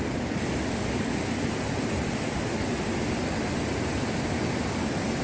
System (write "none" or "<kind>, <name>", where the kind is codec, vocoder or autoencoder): none